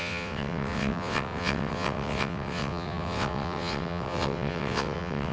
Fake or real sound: fake